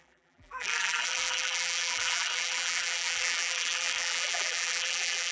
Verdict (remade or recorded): remade